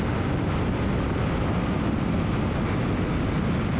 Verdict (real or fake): real